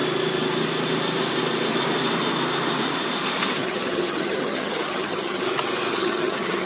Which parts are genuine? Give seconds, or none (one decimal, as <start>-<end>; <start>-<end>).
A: 0.0-3.6; 5.4-5.9